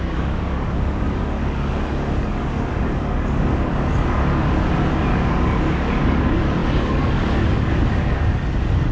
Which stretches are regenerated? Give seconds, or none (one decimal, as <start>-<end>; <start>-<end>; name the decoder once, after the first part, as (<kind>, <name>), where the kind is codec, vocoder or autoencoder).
0.0-4.6 (codec, DAC); 5.1-8.9